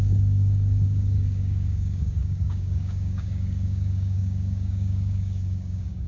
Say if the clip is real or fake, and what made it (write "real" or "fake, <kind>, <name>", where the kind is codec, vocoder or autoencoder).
fake, codec, DAC